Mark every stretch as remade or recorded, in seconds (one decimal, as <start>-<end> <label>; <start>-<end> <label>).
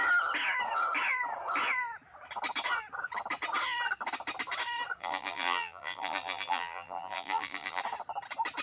0.0-5.0 recorded; 5.0-7.8 remade; 7.8-8.6 recorded